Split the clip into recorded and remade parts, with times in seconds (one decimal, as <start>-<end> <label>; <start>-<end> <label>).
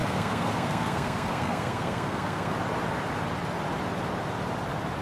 0.0-2.5 remade; 2.5-5.0 recorded